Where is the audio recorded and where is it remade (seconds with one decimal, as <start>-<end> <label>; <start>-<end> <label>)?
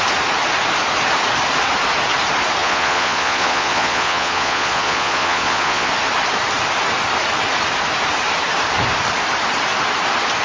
0.0-2.6 recorded; 2.6-5.9 remade; 5.9-10.4 recorded